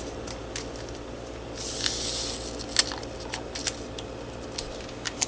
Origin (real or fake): real